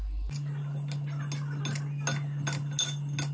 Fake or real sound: real